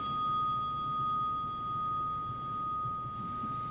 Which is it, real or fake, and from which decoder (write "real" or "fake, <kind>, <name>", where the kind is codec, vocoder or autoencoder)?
real